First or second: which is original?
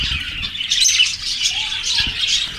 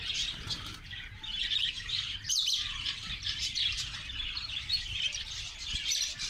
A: first